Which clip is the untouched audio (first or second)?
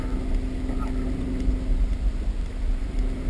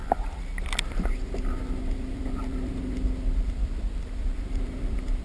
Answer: first